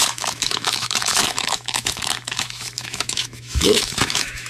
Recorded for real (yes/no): no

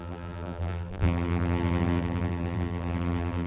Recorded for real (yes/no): no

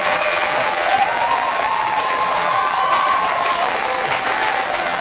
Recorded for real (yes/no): no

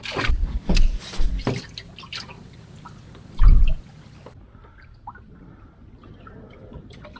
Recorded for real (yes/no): yes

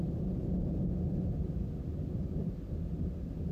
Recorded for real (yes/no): yes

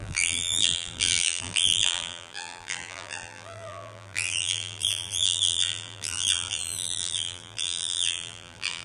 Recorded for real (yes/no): no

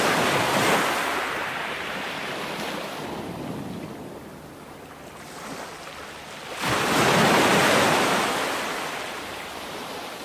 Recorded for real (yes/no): yes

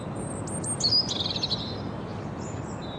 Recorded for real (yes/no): yes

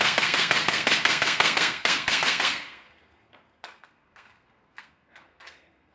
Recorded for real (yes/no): no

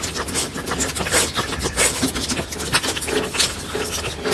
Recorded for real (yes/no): yes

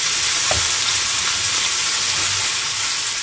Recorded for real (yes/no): yes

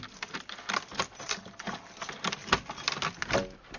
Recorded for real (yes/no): yes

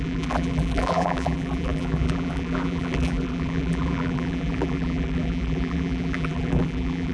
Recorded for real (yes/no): no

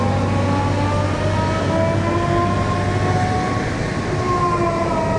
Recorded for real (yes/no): yes